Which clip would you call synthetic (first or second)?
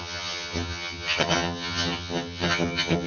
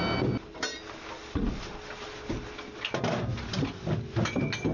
first